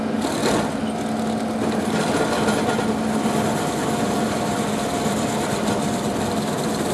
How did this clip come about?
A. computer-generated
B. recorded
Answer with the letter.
B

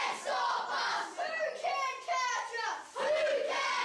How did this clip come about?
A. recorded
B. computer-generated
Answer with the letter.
A